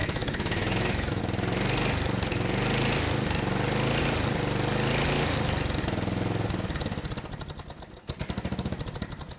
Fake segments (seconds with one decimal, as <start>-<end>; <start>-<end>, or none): 0.0-1.2